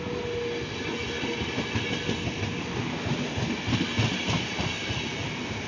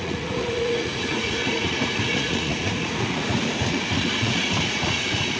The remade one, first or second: second